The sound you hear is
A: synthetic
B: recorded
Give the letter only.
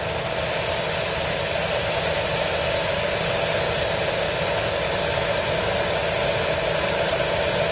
B